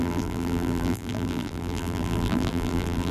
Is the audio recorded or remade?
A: remade